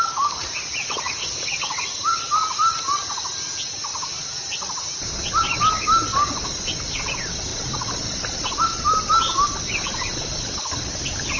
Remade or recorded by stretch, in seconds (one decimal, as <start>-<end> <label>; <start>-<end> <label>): 0.0-11.4 recorded